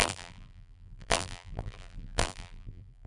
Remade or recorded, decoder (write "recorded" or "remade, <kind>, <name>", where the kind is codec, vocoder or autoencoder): remade, vocoder, BigVGAN v2